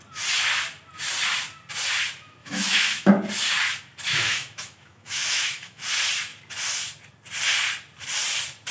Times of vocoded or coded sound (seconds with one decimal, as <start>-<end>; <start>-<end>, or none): 2.4-3.1; 4.1-5.8